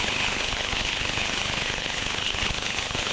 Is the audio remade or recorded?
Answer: remade